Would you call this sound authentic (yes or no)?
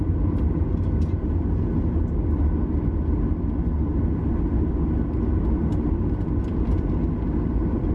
yes